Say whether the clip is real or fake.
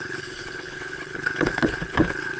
fake